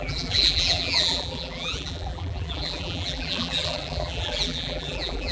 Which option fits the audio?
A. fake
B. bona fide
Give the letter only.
A